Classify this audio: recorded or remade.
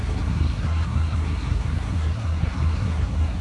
remade